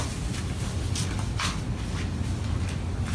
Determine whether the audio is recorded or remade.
recorded